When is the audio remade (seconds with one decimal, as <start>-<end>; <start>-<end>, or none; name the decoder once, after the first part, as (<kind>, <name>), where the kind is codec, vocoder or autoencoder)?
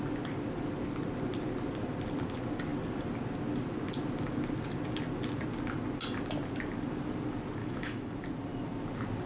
7.6-8.1 (autoencoder, DAC-VAE)